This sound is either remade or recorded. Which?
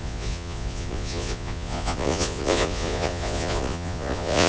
remade